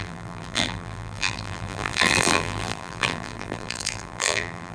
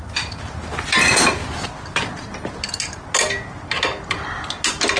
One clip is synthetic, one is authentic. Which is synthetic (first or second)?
first